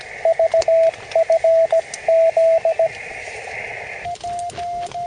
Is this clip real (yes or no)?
yes